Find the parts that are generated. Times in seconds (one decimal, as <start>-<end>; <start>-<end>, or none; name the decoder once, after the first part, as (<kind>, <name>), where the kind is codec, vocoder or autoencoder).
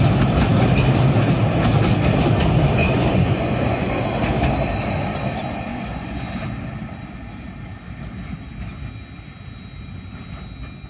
2.8-3.9 (vocoder, Vocos); 5.7-6.4